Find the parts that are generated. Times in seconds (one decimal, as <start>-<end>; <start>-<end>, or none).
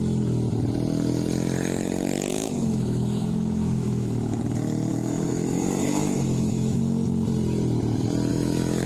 2.3-4.4; 4.9-6.8; 8.3-8.9